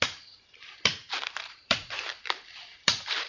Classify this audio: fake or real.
fake